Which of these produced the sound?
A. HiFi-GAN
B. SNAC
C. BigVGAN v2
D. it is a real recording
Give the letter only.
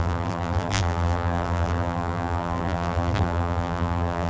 C